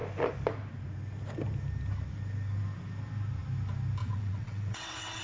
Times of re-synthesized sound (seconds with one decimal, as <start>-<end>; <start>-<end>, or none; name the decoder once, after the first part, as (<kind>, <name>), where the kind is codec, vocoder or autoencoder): 4.0-5.2 (vocoder, WaveNeXt)